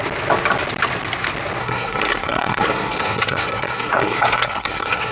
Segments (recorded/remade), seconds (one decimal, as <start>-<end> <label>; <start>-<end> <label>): 0.0-1.6 recorded; 1.6-5.1 remade